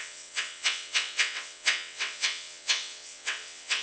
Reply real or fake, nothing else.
fake